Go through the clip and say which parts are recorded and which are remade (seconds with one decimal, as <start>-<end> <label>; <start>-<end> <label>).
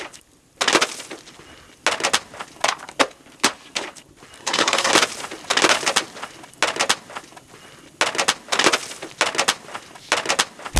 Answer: 0.0-4.4 recorded; 4.4-4.9 remade; 4.9-10.8 recorded